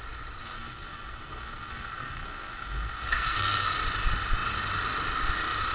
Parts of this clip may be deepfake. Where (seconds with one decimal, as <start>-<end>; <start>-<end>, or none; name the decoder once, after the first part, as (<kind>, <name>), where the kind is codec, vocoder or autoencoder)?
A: 0.4-3.7 (codec, SNAC)